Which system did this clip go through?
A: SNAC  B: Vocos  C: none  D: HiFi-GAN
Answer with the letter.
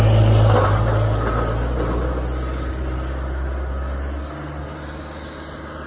C